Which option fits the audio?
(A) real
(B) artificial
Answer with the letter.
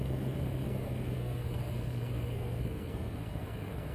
B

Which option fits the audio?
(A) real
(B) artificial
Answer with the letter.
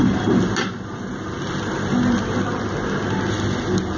A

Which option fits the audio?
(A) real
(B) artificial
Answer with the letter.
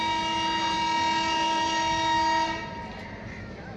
A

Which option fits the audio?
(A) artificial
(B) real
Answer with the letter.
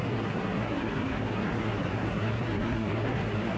A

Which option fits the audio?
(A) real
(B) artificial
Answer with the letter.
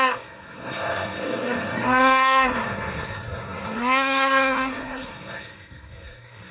B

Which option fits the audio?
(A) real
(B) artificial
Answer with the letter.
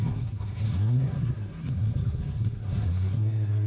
B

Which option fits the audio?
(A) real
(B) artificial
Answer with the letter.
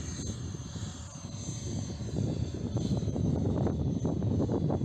A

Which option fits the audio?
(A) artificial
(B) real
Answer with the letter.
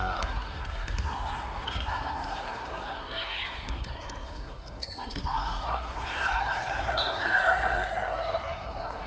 A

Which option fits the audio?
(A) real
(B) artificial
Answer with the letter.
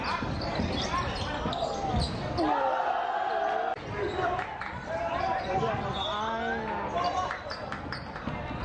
A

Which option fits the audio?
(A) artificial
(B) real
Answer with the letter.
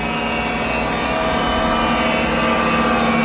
B